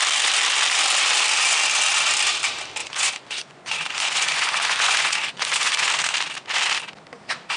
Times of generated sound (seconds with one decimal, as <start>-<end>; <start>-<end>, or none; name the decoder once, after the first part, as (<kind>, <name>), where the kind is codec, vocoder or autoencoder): 2.8-5.9 (vocoder, Vocos)